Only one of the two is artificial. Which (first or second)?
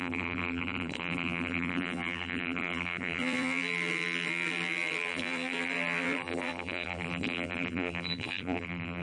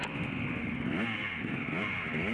first